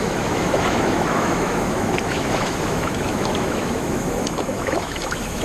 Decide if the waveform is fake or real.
fake